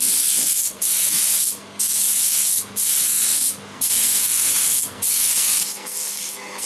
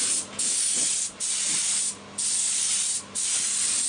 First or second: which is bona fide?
second